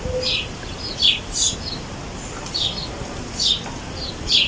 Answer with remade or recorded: recorded